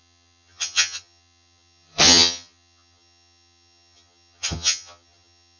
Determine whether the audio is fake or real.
fake